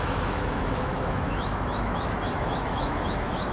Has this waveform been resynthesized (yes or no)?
yes